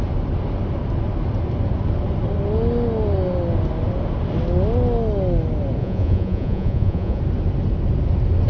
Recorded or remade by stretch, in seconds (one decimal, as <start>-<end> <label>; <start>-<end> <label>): 0.0-5.8 recorded; 5.8-7.2 remade; 7.2-8.5 recorded